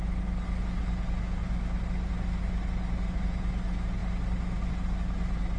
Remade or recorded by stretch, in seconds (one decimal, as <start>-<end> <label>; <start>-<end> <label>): 0.0-5.6 recorded